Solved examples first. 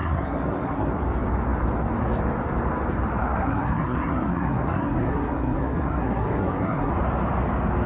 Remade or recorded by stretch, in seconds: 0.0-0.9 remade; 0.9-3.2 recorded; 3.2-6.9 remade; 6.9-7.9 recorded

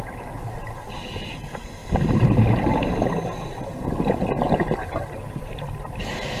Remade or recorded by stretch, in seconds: 0.0-3.7 recorded; 3.7-6.0 remade; 6.0-6.4 recorded

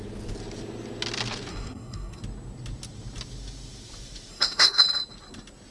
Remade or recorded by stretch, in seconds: 0.0-1.5 recorded; 1.5-2.2 remade; 2.2-4.3 recorded; 4.3-4.8 remade; 4.8-5.7 recorded